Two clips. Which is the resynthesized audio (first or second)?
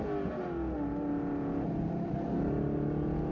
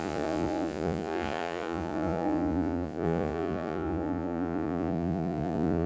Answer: second